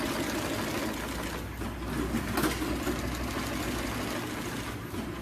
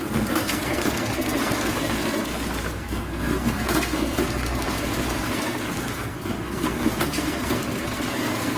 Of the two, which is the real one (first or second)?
first